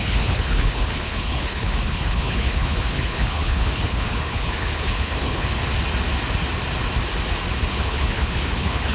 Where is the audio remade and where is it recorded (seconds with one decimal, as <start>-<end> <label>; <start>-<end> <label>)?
0.0-5.6 remade; 5.6-7.7 recorded; 7.7-8.9 remade